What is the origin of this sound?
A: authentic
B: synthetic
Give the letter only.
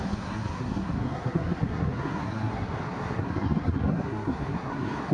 B